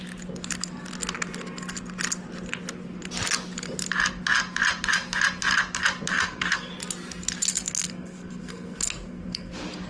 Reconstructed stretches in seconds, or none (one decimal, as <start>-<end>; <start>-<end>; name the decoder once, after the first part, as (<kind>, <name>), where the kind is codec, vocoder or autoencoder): 6.1-6.7 (codec, SNAC); 7.5-9.5